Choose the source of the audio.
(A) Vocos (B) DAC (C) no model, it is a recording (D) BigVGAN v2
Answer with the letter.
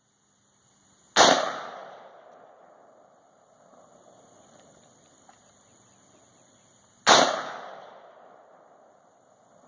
C